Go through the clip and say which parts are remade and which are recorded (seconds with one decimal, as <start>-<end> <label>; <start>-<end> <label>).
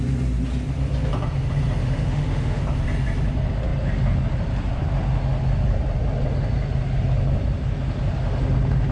0.0-1.8 recorded; 1.8-2.6 remade; 2.6-8.9 recorded